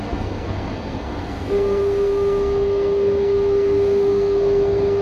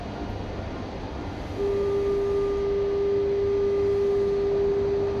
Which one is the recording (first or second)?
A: second